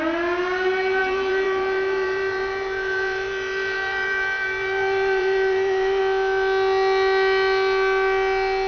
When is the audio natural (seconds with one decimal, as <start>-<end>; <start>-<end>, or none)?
0.0-1.0; 6.0-8.7